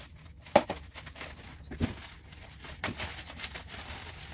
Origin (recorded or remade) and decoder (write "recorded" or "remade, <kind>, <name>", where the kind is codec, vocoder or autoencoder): recorded